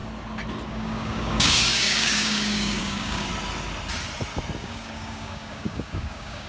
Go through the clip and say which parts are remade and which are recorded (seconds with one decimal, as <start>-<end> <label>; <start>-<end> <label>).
0.0-0.7 recorded; 0.7-3.3 remade; 3.3-4.6 recorded; 4.6-6.5 remade